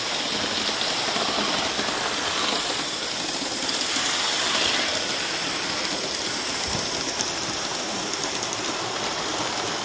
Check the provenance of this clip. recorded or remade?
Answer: recorded